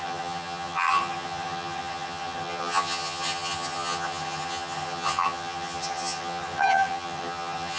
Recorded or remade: remade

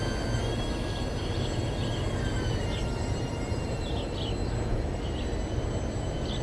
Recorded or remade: recorded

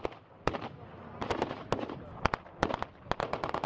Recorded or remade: recorded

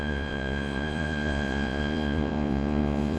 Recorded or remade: remade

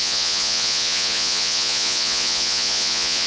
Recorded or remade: remade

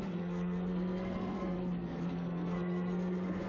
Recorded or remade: remade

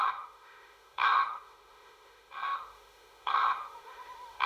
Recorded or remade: remade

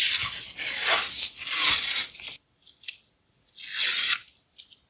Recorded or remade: recorded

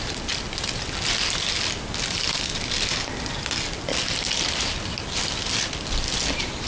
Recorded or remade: recorded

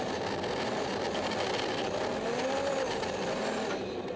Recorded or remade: recorded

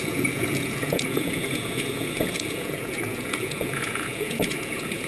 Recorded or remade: remade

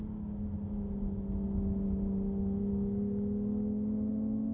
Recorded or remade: recorded